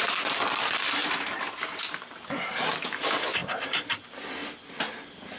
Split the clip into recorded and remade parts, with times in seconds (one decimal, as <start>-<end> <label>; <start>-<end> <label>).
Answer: 0.0-1.0 recorded; 1.0-2.6 remade; 2.6-3.4 recorded; 3.4-4.0 remade; 4.0-5.4 recorded